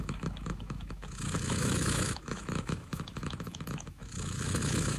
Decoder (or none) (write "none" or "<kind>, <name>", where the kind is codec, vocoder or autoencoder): autoencoder, DAC-VAE